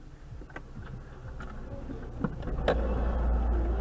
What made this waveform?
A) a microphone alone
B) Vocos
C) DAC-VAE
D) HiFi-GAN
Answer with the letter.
A